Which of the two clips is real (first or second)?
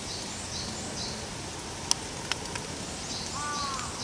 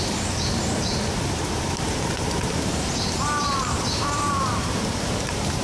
first